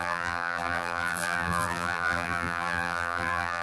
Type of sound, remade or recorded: remade